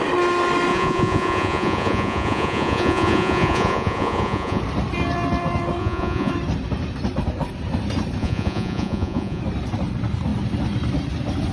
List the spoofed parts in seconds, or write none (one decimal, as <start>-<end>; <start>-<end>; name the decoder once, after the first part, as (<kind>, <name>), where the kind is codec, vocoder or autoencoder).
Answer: 0.7-4.6 (vocoder, Vocos); 5.8-6.3; 8.2-9.4